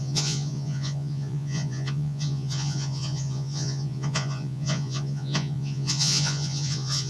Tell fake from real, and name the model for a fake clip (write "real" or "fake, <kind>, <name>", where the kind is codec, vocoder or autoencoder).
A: fake, vocoder, Vocos